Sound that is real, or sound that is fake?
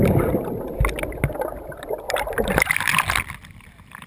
real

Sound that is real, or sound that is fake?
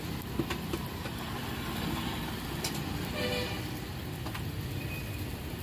real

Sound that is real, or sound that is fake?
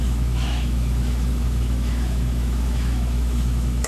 fake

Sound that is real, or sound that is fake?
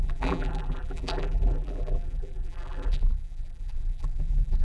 fake